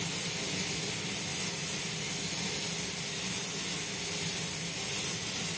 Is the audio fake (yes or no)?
no